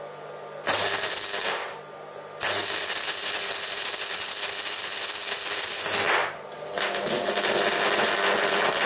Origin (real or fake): real